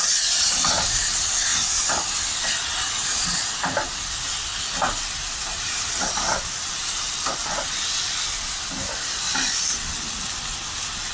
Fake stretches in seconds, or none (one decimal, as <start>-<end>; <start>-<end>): none